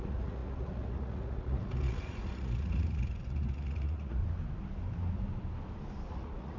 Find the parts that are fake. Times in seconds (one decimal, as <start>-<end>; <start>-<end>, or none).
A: 0.0-4.2; 6.1-6.6